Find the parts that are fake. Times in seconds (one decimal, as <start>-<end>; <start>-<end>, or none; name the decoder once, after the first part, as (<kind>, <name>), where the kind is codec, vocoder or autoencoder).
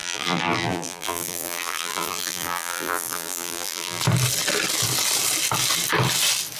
0.0-4.0 (vocoder, BigVGAN v2)